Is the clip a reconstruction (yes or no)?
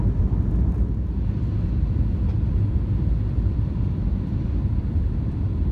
yes